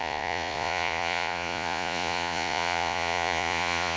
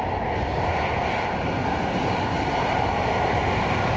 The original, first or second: second